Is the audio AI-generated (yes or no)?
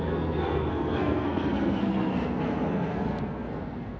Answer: yes